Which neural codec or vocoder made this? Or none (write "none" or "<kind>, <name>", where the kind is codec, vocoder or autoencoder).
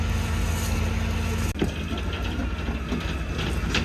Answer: none